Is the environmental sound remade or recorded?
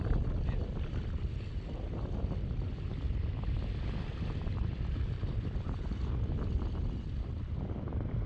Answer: recorded